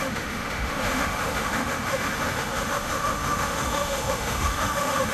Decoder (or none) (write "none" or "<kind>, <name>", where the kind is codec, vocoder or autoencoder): autoencoder, DAC-VAE